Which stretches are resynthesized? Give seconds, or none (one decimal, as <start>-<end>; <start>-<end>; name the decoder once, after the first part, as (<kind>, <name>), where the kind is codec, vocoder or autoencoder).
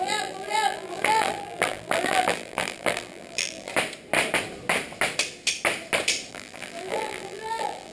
0.0-3.7 (vocoder, BigVGAN v2); 6.3-7.9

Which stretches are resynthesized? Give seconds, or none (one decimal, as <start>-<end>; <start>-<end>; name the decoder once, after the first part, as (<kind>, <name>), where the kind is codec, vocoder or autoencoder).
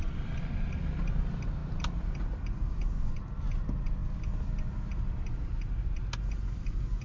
1.6-2.4 (vocoder, BigVGAN v2); 4.0-4.7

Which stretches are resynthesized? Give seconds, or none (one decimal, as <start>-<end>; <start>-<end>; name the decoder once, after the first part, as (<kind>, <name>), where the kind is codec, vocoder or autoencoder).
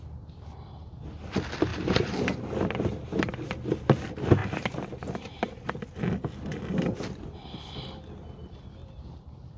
1.7-2.4 (vocoder, BigVGAN v2); 8.8-9.6